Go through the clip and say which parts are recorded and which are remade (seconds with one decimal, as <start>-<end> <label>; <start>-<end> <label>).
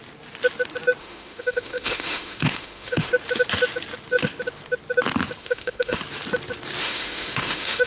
0.0-1.0 recorded; 1.0-3.1 remade; 3.1-5.4 recorded; 5.4-6.0 remade; 6.0-6.8 recorded; 6.8-7.9 remade